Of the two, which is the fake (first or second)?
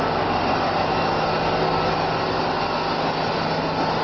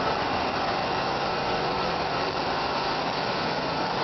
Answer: second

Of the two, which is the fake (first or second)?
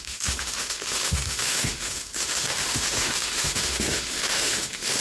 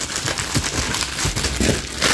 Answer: first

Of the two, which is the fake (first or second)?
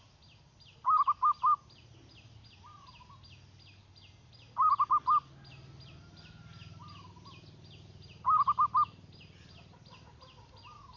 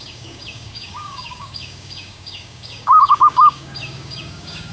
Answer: second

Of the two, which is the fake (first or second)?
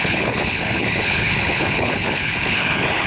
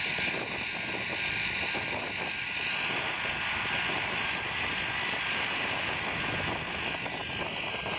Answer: first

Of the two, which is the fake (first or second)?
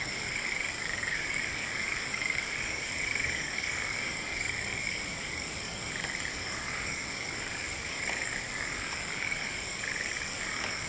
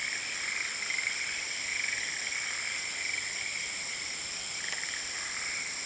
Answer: first